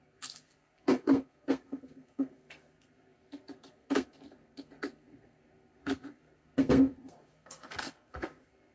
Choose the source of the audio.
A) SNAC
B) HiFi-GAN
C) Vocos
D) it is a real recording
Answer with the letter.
A